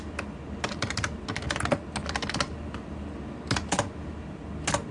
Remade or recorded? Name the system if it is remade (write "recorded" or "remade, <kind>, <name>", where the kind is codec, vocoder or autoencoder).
recorded